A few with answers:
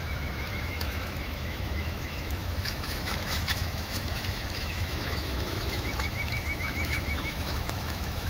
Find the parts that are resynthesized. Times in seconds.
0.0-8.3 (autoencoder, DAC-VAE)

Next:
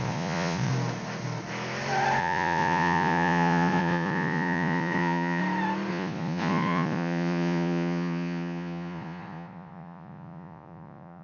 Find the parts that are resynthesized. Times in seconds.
0.0-0.7 (vocoder, Vocos); 2.2-5.4; 5.9-11.2

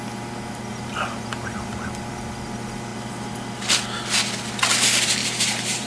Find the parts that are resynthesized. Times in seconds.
0.7-1.7 (vocoder, BigVGAN v2); 5.2-5.9

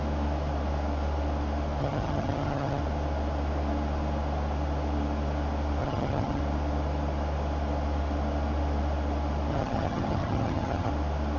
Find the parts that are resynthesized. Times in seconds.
1.8-2.8 (vocoder, HiFi-GAN); 5.8-6.4; 9.5-10.9

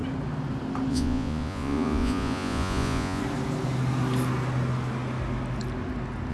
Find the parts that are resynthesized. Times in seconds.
0.9-3.2 (vocoder, Vocos)